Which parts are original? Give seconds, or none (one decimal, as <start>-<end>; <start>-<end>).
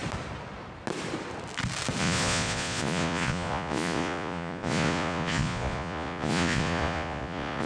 0.0-2.0